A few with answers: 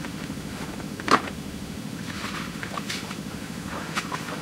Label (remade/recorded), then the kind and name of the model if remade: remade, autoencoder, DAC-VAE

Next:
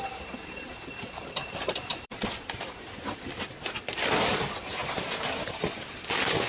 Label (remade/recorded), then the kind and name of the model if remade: remade, vocoder, BigVGAN v2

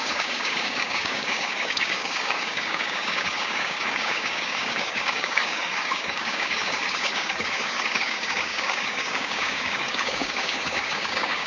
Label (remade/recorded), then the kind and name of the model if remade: remade, codec, DAC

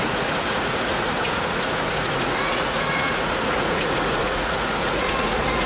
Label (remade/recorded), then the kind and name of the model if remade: remade, vocoder, Vocos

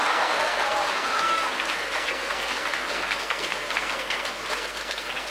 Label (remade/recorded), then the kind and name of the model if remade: remade, codec, SNAC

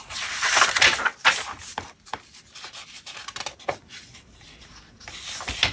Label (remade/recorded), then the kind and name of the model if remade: recorded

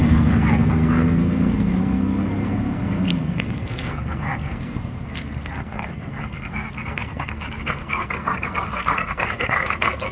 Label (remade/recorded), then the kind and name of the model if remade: remade, codec, SNAC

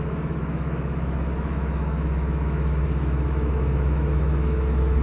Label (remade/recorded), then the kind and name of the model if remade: remade, autoencoder, DAC-VAE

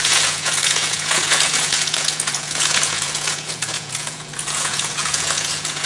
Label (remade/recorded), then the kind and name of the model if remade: remade, vocoder, Vocos